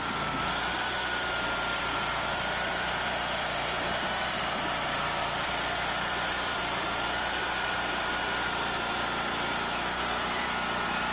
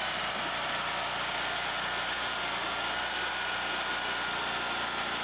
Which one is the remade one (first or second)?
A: first